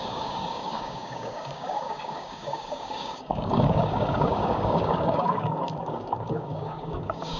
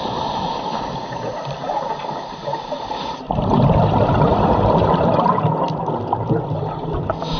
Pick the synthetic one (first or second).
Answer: first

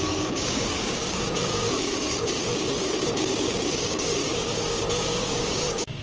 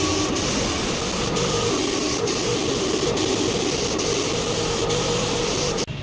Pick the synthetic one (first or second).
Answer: first